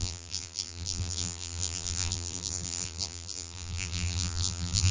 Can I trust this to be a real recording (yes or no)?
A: no